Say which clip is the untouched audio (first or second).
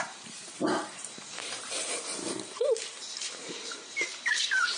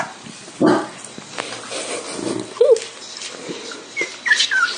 second